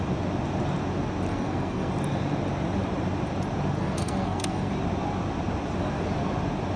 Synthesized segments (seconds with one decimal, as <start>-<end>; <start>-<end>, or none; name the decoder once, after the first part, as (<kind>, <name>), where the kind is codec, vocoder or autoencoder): 1.3-1.9 (codec, SNAC); 3.8-4.7